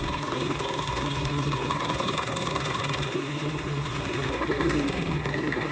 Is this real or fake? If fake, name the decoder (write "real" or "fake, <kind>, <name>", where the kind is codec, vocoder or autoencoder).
fake, codec, SNAC